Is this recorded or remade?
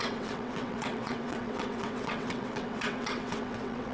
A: remade